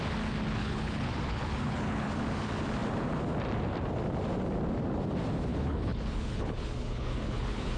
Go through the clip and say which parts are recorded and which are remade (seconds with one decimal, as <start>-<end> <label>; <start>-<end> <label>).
0.0-0.6 recorded; 0.6-2.1 remade; 2.1-5.5 recorded; 5.5-7.8 remade